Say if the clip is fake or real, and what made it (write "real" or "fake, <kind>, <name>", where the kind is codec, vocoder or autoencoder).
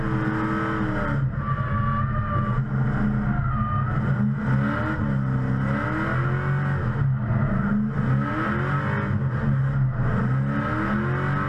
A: real